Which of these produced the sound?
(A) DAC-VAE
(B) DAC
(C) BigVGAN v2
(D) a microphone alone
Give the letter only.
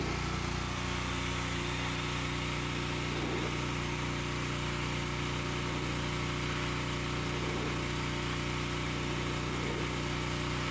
D